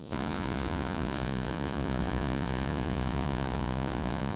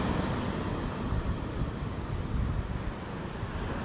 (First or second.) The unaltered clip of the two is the second